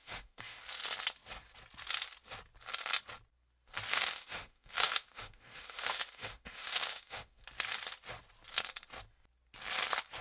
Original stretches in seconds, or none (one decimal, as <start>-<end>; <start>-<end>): 0.6-3.9; 7.4-10.2

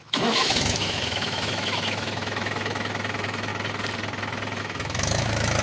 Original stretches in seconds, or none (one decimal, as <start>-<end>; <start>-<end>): 3.5-4.6

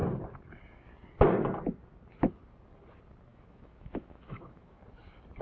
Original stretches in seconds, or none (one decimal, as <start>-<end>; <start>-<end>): 0.0-3.3; 4.8-5.4

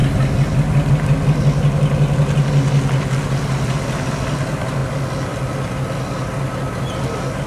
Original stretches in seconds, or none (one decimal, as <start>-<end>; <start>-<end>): 0.0-7.5

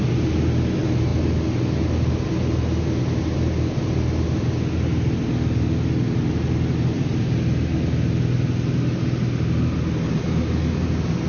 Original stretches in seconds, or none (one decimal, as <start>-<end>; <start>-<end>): 0.0-11.3

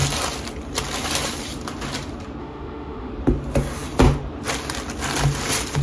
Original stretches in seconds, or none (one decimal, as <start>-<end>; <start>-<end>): 0.0-2.4; 3.1-5.8

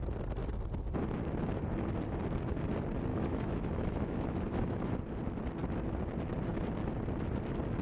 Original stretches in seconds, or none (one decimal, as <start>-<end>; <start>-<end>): 0.0-3.1; 4.9-7.8